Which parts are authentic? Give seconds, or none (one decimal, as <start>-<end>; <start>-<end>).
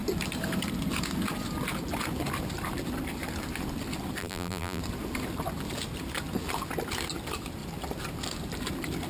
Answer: 0.0-4.2; 4.8-9.1